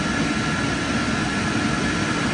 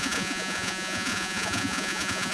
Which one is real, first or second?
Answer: first